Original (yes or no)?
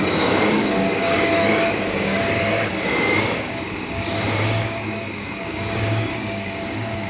no